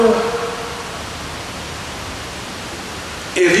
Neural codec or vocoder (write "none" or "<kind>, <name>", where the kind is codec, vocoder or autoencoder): none